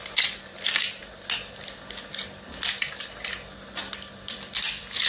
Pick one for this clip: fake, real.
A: real